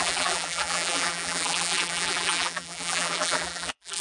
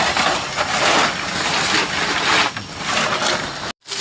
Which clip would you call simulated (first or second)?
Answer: first